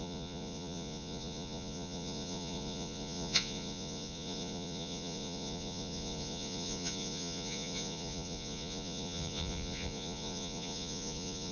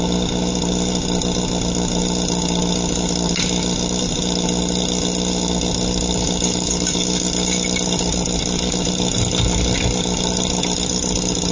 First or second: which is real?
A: second